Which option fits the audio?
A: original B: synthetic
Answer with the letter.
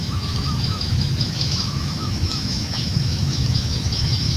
B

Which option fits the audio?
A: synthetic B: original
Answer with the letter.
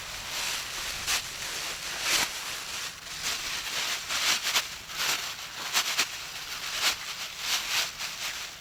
B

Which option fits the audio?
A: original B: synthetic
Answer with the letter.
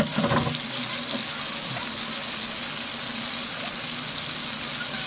A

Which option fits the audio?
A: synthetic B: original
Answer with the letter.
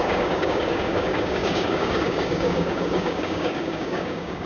A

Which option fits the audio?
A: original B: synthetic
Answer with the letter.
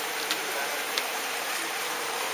B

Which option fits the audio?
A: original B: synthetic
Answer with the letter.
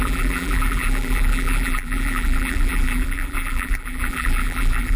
B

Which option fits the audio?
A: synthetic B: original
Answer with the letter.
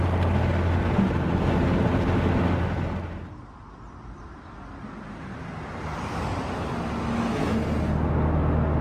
B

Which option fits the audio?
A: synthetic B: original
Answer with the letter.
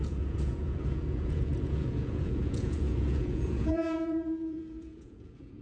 A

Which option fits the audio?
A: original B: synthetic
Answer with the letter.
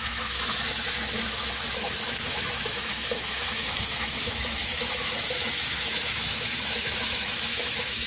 B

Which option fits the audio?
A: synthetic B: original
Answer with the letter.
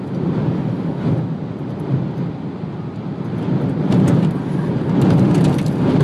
B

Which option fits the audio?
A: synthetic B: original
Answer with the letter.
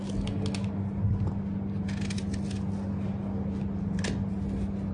B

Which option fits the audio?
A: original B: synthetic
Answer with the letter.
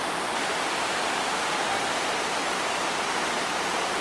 B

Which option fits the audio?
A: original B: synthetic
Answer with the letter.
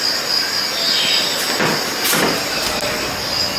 A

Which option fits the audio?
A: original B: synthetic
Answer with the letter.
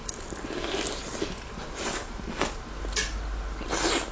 A